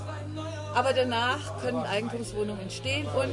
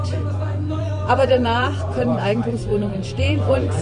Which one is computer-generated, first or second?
second